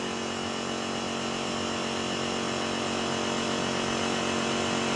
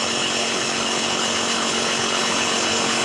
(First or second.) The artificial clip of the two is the second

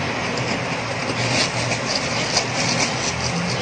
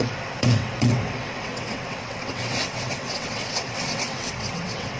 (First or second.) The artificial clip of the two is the second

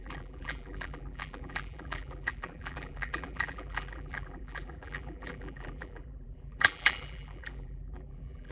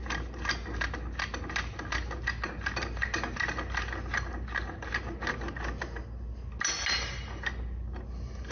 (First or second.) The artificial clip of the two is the first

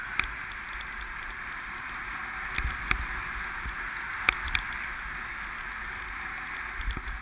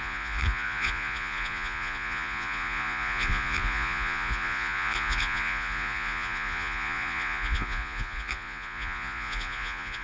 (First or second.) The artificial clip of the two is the second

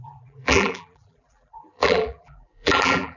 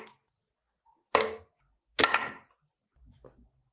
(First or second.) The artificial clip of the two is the first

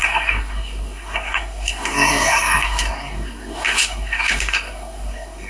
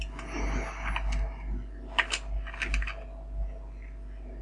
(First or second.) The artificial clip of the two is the first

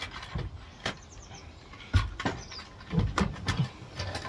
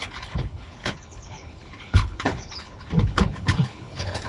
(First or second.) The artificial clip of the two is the second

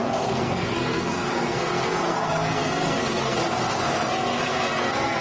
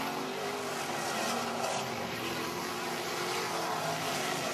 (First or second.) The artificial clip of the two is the first